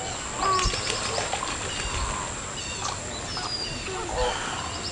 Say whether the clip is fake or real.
real